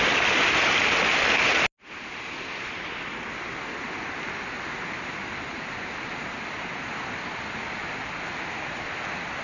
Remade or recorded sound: recorded